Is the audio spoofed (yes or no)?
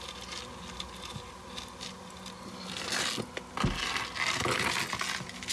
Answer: no